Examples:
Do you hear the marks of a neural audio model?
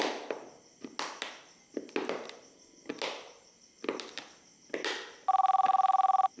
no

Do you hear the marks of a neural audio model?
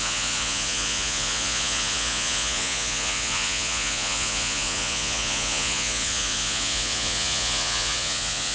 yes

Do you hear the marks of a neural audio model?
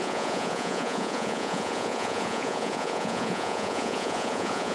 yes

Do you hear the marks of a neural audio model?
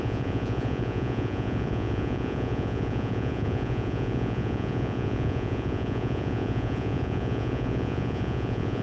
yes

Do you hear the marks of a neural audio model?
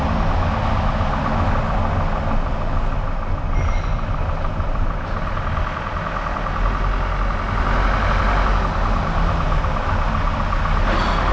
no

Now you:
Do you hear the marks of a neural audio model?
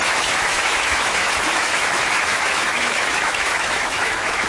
yes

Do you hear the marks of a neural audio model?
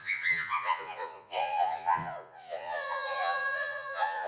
yes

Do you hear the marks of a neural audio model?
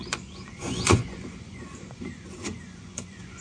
yes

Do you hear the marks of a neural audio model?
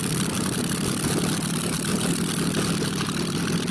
no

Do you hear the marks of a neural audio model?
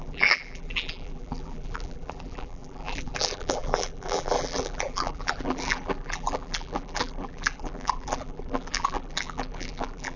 yes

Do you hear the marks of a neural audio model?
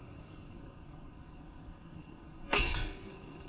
yes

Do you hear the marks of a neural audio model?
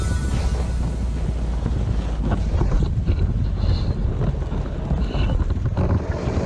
no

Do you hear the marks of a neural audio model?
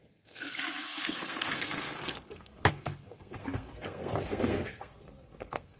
yes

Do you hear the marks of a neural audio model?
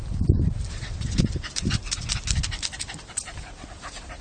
no